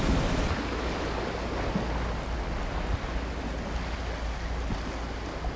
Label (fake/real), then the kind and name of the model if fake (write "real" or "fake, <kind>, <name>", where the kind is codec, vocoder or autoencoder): real